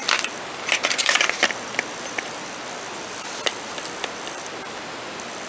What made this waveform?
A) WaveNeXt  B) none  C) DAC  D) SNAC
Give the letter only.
B